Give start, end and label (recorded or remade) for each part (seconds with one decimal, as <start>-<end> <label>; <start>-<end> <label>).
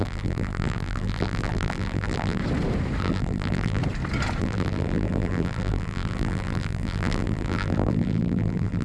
0.0-2.4 remade; 2.4-3.0 recorded; 3.0-3.8 remade; 3.8-4.4 recorded; 4.4-8.8 remade